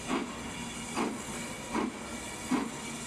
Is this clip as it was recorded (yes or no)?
yes